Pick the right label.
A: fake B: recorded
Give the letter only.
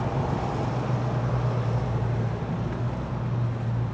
B